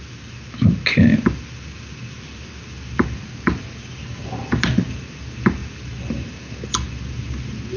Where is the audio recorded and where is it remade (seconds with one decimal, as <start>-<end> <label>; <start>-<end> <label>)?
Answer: 0.0-7.8 recorded

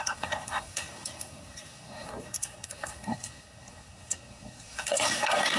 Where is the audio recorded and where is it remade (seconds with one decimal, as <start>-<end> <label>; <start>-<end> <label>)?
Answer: 0.0-5.6 remade